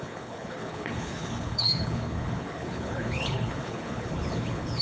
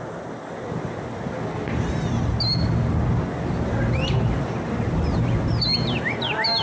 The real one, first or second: second